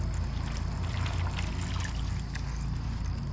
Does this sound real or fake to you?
real